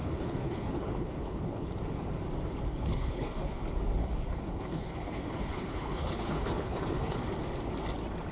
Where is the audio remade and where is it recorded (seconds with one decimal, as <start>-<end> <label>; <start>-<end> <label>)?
0.0-1.7 remade; 1.7-2.7 recorded; 2.7-3.6 remade; 3.6-4.0 recorded; 4.0-7.2 remade; 7.2-8.3 recorded